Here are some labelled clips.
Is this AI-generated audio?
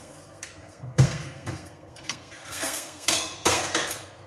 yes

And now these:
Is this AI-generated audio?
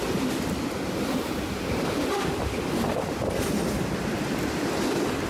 no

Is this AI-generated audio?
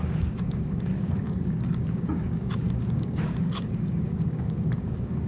yes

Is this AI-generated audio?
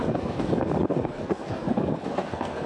yes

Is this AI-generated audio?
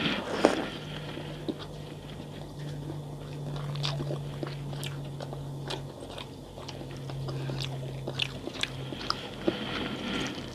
no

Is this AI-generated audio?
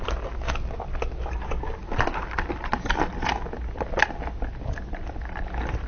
no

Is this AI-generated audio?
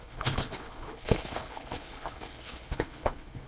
yes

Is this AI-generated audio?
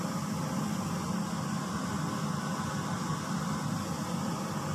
no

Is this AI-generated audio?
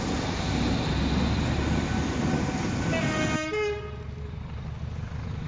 no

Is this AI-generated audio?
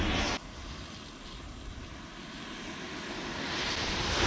no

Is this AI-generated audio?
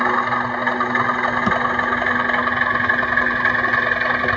no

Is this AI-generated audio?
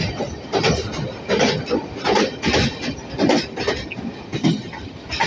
no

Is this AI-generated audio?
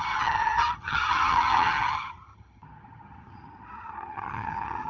yes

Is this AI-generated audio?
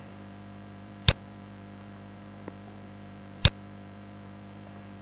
yes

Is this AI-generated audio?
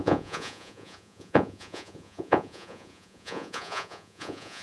yes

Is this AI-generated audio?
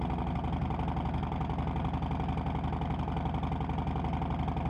no